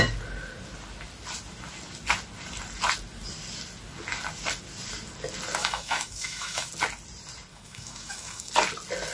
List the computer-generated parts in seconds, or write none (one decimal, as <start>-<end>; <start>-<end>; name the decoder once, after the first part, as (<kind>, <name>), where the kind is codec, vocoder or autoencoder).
5.6-6.7 (autoencoder, DAC-VAE); 7.5-8.5